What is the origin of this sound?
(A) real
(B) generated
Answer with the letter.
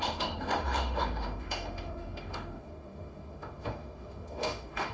B